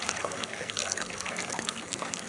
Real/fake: fake